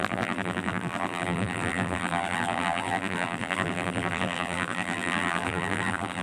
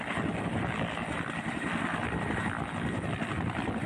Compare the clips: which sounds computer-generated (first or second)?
first